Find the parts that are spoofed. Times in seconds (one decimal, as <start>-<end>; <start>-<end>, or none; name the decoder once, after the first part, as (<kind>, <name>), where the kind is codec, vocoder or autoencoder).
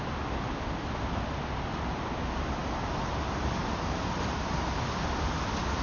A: none